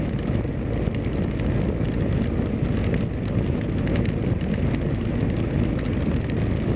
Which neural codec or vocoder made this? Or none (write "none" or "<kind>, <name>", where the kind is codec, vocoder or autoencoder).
none